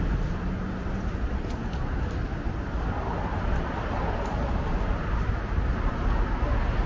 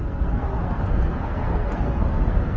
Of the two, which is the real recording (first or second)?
first